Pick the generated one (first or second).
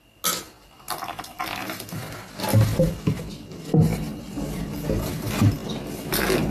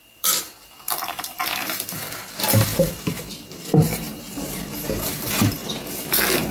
second